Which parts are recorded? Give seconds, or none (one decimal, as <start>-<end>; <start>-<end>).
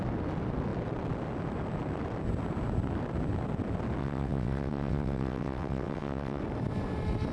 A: 0.0-4.0; 6.4-7.3